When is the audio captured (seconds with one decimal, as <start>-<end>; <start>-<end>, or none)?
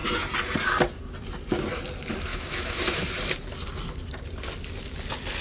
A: 0.0-2.3; 3.0-5.4